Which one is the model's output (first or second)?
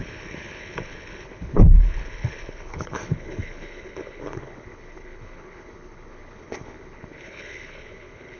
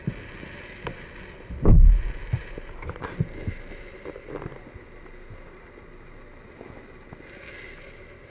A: first